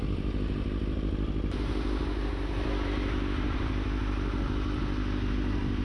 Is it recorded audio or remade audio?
recorded